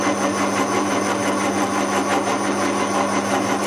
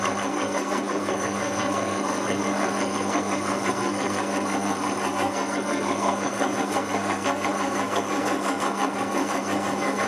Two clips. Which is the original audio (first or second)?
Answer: first